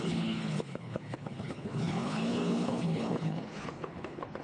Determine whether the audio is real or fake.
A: fake